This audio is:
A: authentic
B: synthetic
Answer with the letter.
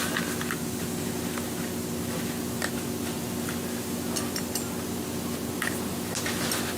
A